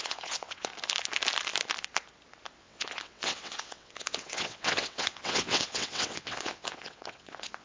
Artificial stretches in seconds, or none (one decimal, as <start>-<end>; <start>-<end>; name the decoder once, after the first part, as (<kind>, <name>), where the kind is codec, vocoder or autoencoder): 0.0-0.7 (vocoder, WaveNeXt); 2.6-7.6